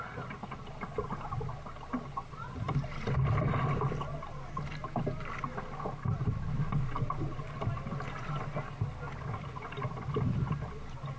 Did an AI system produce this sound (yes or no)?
no